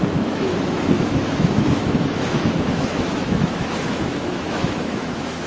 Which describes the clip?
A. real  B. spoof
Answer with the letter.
B